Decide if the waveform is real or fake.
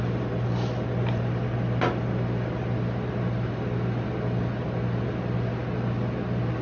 real